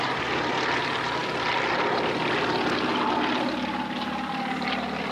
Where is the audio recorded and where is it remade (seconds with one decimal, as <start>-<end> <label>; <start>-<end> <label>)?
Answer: 0.0-5.1 recorded